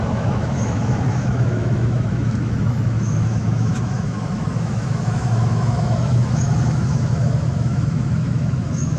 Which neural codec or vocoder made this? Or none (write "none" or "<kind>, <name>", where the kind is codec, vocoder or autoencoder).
autoencoder, DAC-VAE